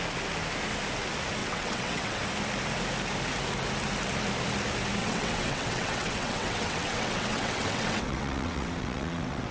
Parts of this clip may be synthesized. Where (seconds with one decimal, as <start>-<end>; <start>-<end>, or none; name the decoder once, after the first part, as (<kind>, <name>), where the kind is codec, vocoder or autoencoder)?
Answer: 1.4-2.2 (vocoder, WaveNeXt); 5.0-9.5